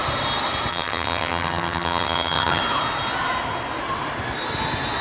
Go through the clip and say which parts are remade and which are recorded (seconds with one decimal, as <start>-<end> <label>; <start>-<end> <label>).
0.0-0.7 recorded; 0.7-2.6 remade; 2.6-5.0 recorded